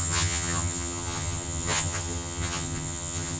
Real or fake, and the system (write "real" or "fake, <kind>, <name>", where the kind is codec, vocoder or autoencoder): fake, vocoder, HiFi-GAN